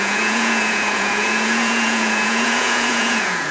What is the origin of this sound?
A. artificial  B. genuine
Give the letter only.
A